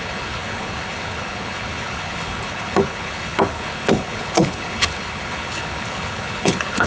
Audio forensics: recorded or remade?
remade